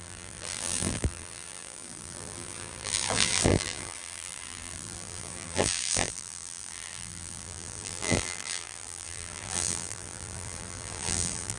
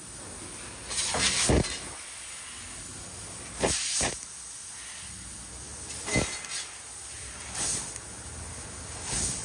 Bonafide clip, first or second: second